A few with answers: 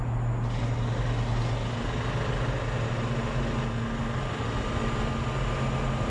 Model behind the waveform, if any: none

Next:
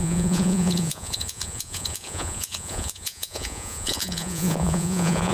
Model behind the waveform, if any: vocoder, Vocos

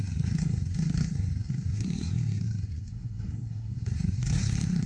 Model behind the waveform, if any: codec, SNAC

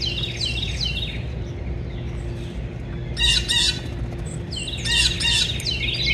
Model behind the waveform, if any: none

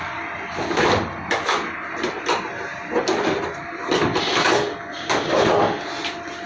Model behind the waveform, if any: none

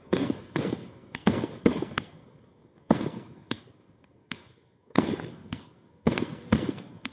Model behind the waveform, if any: codec, SNAC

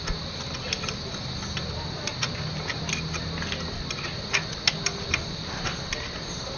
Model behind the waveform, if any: none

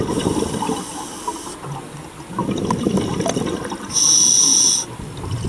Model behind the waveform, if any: none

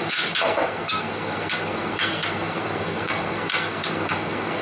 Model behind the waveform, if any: codec, SNAC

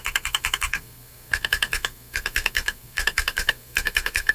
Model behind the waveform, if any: codec, SNAC